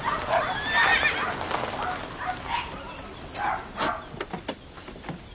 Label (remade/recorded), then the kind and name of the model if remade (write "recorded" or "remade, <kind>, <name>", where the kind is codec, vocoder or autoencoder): recorded